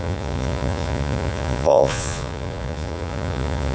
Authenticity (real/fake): fake